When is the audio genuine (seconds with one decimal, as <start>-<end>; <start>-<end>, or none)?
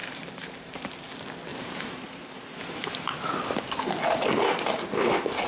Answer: 0.8-1.5; 3.2-5.5